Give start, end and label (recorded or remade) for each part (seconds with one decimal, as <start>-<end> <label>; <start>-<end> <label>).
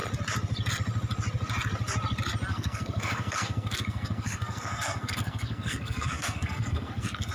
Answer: 0.0-2.5 recorded; 2.5-7.3 remade